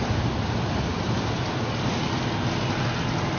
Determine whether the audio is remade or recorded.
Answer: recorded